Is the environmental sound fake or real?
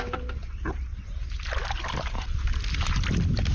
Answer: real